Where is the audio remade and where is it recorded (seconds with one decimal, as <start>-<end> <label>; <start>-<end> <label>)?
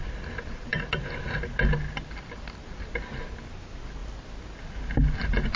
0.0-5.6 recorded